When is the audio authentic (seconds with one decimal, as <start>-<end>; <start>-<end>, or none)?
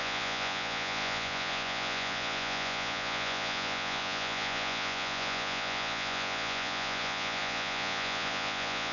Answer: none